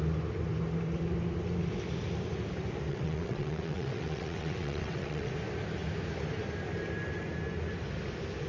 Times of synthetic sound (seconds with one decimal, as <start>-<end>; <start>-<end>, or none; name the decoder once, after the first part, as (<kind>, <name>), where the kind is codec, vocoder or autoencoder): 2.9-5.3 (vocoder, WaveNeXt)